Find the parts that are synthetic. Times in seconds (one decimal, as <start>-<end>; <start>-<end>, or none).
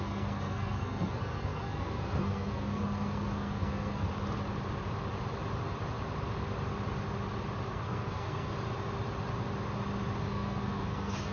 0.0-4.1; 7.7-8.5; 10.2-11.3